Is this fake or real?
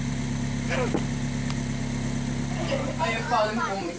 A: real